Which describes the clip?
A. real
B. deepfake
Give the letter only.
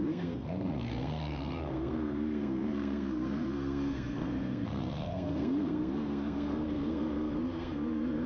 B